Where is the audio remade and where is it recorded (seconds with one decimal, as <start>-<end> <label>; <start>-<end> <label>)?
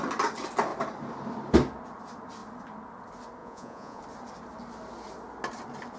0.0-3.4 recorded; 3.4-4.0 remade; 4.0-6.0 recorded